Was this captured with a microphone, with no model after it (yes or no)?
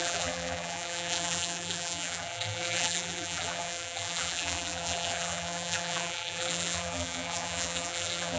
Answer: no